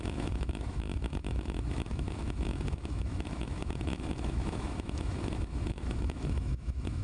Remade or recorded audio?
remade